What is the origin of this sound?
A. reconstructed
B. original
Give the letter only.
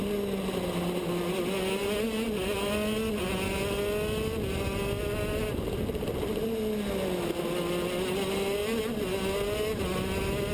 B